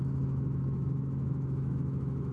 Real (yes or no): no